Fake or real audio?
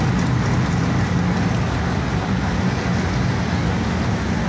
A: real